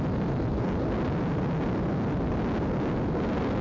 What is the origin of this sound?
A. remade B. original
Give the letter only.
B